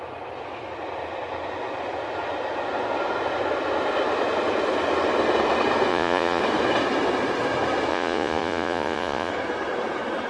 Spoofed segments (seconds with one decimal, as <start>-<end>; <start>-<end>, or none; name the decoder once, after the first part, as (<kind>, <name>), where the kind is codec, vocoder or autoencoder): 5.9-6.4 (vocoder, Vocos); 7.9-9.3